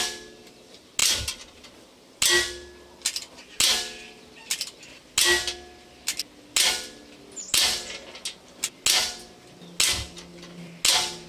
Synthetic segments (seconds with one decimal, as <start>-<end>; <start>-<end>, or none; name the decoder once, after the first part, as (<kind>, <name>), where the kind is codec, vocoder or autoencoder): none